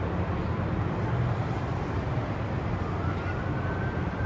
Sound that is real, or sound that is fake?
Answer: real